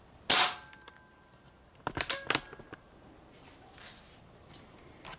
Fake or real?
real